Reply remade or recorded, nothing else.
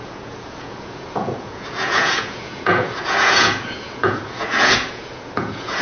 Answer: remade